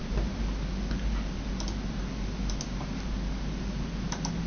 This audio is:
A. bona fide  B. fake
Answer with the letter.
A